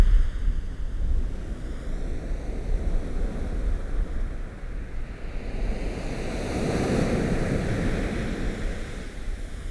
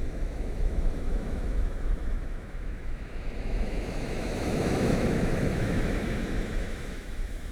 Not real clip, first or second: second